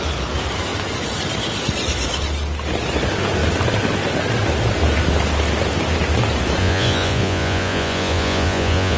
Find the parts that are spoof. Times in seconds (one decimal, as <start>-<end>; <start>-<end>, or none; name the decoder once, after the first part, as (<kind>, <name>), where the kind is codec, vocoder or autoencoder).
6.6-9.0 (vocoder, Vocos)